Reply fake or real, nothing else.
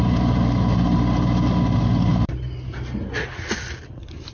real